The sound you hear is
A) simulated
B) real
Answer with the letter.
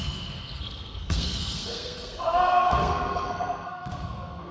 A